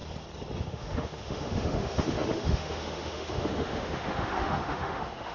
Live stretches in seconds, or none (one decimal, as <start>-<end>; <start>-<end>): 0.0-0.6